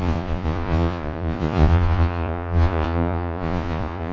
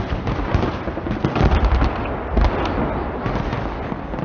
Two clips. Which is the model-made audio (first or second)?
first